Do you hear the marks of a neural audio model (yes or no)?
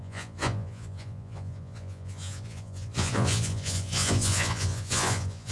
yes